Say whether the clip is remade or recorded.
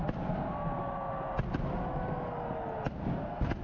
recorded